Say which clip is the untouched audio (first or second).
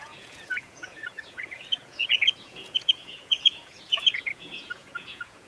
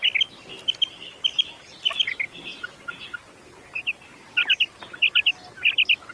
second